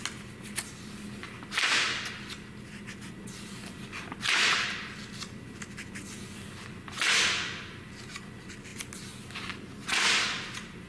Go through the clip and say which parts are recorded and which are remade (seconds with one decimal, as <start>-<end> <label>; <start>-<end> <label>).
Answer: 0.0-10.9 recorded